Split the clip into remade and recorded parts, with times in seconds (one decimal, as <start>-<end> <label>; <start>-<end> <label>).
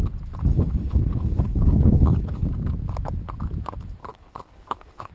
0.0-0.5 recorded; 0.5-2.5 remade; 2.5-4.0 recorded; 4.0-5.1 remade